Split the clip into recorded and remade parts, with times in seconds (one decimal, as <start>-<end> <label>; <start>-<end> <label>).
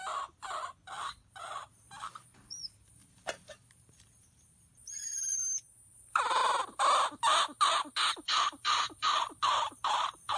0.0-1.1 recorded; 1.1-5.4 remade; 5.4-5.9 recorded; 5.9-6.4 remade; 6.4-8.1 recorded; 8.1-10.4 remade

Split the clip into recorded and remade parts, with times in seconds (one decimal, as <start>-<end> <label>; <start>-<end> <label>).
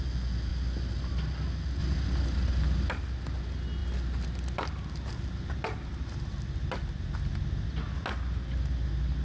0.0-0.5 recorded; 0.5-1.1 remade; 1.1-1.8 recorded; 1.8-2.9 remade; 2.9-3.8 recorded; 3.8-4.9 remade; 4.9-9.2 recorded